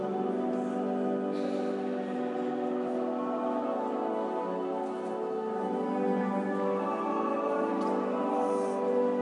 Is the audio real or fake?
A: real